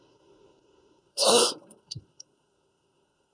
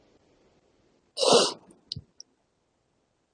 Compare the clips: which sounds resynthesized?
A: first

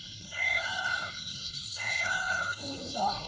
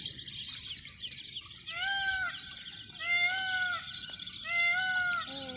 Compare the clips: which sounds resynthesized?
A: first